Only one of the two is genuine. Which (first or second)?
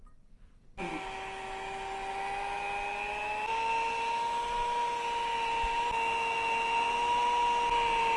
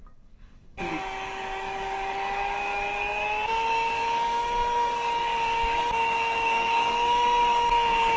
first